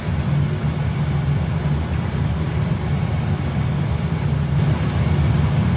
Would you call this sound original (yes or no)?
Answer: yes